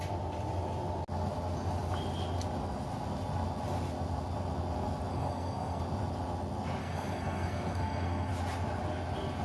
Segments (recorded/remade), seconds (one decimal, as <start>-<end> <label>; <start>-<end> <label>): 0.0-5.1 recorded; 5.1-5.8 remade; 5.8-6.8 recorded; 6.8-8.3 remade; 8.3-9.4 recorded